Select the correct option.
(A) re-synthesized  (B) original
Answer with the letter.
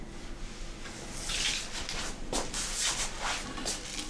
B